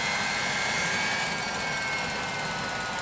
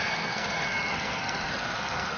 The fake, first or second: second